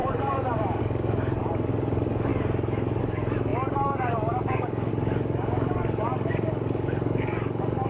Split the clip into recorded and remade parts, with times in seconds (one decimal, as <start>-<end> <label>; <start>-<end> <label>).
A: 0.0-2.3 remade; 2.3-3.0 recorded; 3.0-7.9 remade